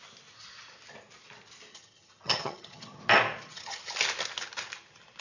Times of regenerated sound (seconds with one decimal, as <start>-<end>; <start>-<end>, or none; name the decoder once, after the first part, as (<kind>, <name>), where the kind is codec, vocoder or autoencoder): 1.7-3.0 (vocoder, HiFi-GAN); 3.4-3.9